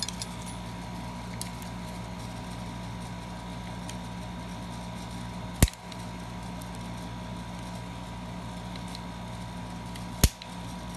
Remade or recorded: recorded